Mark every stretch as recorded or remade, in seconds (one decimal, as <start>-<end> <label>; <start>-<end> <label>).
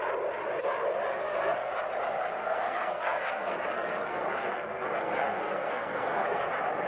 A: 0.0-1.1 recorded; 1.1-1.7 remade; 1.7-2.4 recorded; 2.4-6.5 remade; 6.5-6.9 recorded